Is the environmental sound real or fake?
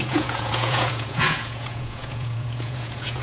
fake